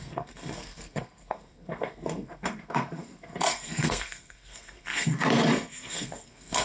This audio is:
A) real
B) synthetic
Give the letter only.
B